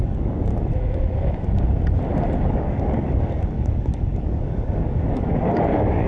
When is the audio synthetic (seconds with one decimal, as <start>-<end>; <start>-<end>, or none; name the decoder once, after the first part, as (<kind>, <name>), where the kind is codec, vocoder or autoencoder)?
0.0-0.5 (codec, DAC); 2.5-6.1